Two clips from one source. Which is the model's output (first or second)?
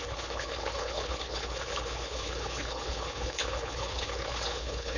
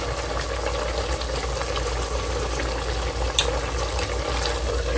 first